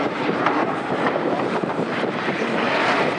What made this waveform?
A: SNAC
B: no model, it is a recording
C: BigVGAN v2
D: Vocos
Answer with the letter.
C